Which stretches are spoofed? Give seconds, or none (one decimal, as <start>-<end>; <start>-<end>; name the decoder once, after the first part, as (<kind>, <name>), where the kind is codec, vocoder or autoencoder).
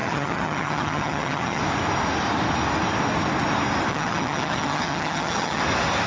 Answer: 0.0-1.6 (vocoder, HiFi-GAN); 3.9-5.6